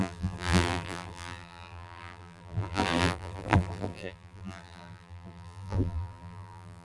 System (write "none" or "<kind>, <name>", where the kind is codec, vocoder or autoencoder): vocoder, BigVGAN v2